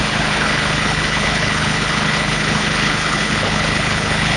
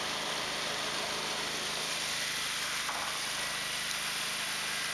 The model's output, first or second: first